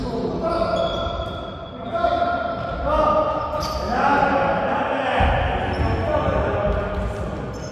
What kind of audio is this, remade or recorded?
recorded